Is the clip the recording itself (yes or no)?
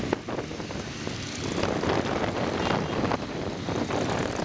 yes